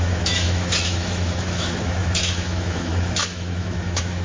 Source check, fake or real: fake